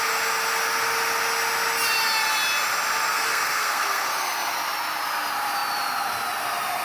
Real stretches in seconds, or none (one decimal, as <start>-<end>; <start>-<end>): 0.0-3.1; 4.1-6.8